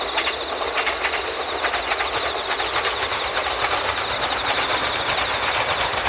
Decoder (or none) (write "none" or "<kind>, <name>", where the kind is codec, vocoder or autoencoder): none